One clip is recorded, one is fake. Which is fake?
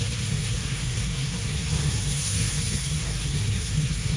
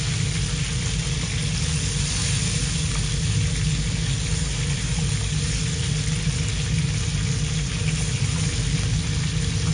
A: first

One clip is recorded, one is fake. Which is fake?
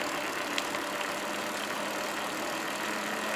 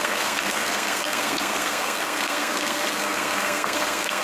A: second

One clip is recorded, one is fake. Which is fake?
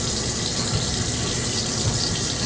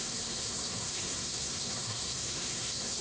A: second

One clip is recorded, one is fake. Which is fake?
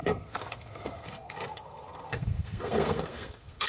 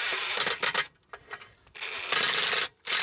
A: first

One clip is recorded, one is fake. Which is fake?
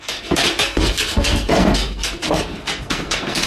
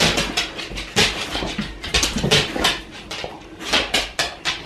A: first